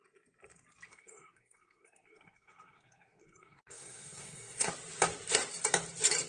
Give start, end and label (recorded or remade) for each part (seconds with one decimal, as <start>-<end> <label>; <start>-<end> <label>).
0.0-0.9 recorded; 0.9-4.7 remade; 4.7-6.3 recorded